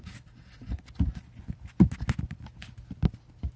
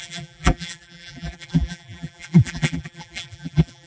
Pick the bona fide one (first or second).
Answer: first